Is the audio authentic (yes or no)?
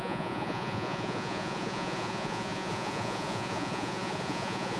no